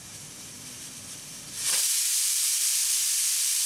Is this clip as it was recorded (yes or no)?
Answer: no